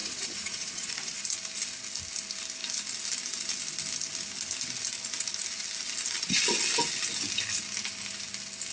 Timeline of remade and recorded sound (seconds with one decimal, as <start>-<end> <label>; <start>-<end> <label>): 0.0-1.2 remade; 1.2-8.7 recorded